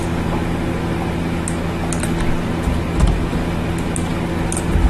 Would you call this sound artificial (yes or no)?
no